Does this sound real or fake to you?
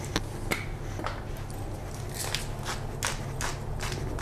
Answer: real